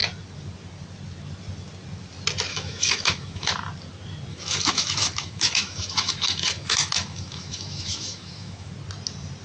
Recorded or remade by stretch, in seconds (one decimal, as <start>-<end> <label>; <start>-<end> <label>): 0.0-2.5 recorded; 2.5-3.5 remade; 3.5-4.3 recorded; 4.3-8.7 remade; 8.7-9.4 recorded